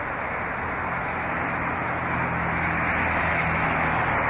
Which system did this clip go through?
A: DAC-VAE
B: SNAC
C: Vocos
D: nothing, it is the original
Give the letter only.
D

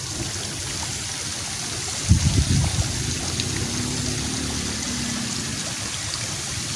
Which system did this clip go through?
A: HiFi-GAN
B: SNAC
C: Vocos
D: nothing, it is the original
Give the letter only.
D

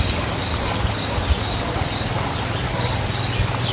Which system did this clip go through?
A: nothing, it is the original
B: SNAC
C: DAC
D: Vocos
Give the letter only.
A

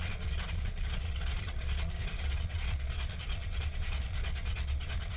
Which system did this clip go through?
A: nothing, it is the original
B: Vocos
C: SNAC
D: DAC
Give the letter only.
B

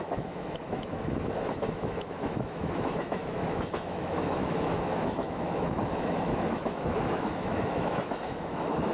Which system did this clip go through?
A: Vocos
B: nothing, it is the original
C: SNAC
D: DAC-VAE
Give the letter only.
D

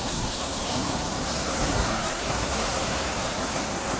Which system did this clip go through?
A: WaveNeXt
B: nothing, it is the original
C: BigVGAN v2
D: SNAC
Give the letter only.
D